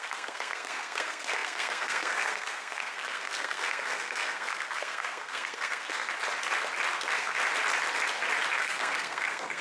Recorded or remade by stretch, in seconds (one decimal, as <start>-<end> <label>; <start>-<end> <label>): 0.0-6.1 remade; 6.1-6.9 recorded; 6.9-7.4 remade; 7.4-8.6 recorded; 8.6-9.6 remade